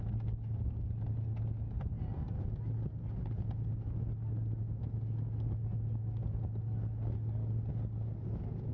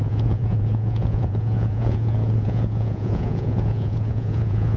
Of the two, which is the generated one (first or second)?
second